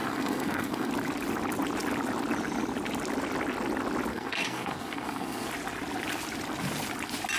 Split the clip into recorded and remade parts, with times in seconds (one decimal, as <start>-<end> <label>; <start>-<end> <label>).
0.0-0.9 remade; 0.9-4.1 recorded; 4.1-5.5 remade; 5.5-7.4 recorded